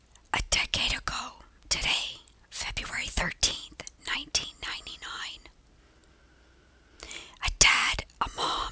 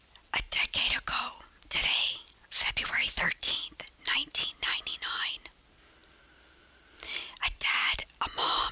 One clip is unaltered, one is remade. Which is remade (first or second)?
second